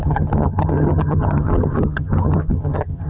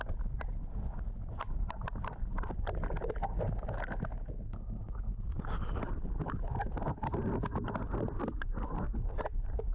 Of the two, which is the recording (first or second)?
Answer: second